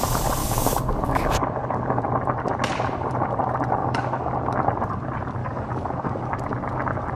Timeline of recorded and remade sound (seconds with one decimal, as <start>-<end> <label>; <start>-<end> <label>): 0.0-0.4 recorded; 0.4-2.0 remade; 2.0-3.8 recorded; 3.8-4.3 remade; 4.3-5.4 recorded; 5.4-6.3 remade; 6.3-7.2 recorded